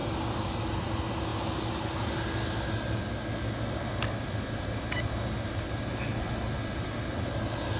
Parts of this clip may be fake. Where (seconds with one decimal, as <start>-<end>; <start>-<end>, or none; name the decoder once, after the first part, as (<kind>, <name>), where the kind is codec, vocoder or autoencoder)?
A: 0.0-0.6 (vocoder, BigVGAN v2)